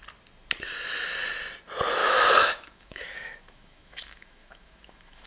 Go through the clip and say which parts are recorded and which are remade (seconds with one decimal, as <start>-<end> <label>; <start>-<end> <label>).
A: 0.0-2.0 recorded; 2.0-5.3 remade